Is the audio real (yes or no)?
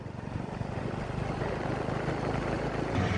yes